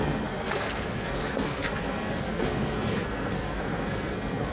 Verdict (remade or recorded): remade